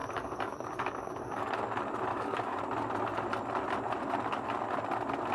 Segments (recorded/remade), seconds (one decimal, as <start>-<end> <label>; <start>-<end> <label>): 0.0-1.5 remade; 1.5-2.1 recorded; 2.1-2.6 remade; 2.6-5.3 recorded